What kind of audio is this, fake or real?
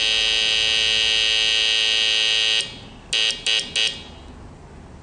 real